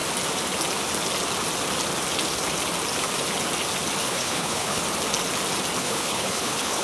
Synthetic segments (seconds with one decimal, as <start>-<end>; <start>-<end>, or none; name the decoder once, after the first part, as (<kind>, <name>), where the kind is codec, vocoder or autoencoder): 4.0-4.8 (codec, HILCodec); 5.8-6.8